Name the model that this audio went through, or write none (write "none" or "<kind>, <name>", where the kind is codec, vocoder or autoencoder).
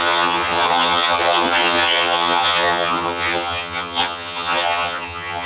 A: vocoder, HiFi-GAN